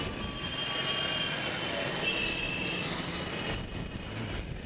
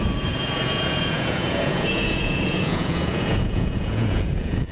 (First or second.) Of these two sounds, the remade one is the second